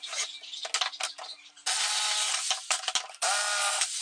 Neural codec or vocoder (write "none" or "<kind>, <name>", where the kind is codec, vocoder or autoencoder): none